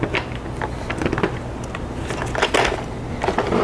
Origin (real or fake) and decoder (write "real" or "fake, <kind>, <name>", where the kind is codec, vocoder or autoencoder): real